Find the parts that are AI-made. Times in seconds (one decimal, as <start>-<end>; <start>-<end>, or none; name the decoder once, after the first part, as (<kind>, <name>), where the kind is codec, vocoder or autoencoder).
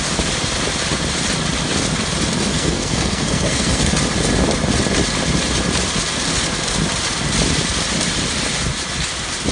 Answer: 2.5-3.9 (codec, SNAC)